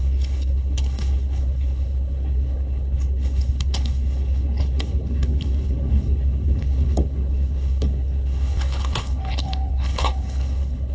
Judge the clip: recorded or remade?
remade